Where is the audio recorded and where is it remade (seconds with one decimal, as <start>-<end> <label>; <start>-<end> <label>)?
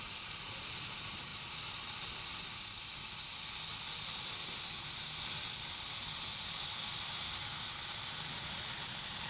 0.0-9.3 recorded